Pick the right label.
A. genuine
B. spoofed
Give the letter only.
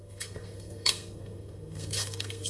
B